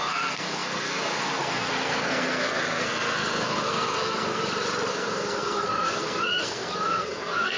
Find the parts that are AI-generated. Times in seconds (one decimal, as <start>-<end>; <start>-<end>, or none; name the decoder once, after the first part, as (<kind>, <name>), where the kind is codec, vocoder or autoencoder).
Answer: 0.0-4.4 (codec, SNAC); 4.9-7.6